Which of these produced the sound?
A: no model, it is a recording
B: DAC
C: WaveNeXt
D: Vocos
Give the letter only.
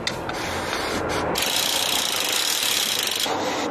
A